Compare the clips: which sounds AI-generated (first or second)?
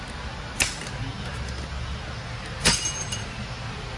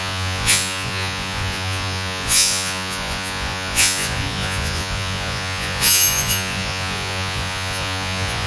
second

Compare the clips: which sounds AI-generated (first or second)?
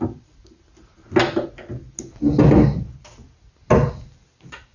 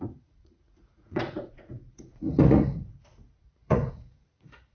second